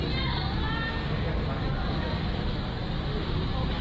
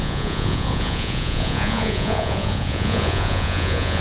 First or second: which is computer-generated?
second